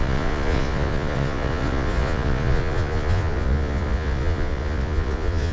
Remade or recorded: remade